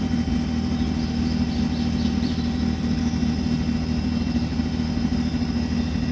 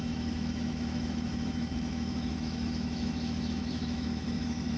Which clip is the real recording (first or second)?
first